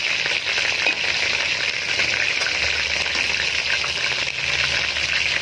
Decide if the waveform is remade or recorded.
recorded